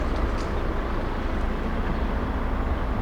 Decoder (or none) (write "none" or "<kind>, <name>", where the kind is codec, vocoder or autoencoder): none